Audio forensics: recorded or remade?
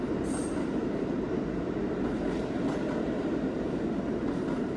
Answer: recorded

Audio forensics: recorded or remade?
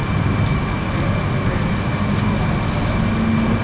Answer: recorded